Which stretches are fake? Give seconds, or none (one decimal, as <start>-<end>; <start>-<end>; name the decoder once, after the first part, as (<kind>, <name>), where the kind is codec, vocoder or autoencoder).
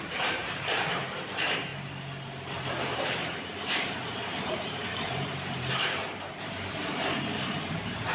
0.0-1.7 (vocoder, BigVGAN v2); 2.8-8.1